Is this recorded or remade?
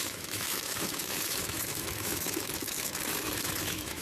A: remade